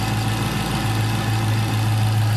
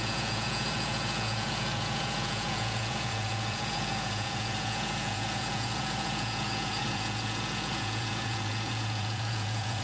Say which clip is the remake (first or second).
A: second